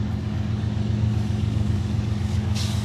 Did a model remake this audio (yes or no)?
yes